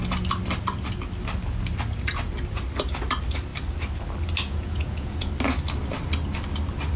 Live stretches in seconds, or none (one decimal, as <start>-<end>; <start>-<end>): 0.0-4.5; 5.3-7.0